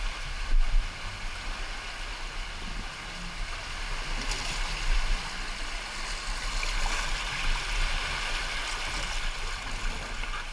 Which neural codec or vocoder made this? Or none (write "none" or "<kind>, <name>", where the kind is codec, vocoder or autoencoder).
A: none